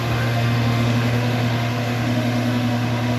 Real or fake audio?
fake